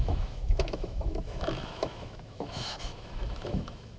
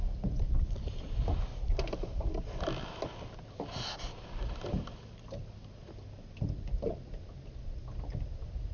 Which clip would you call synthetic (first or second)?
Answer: first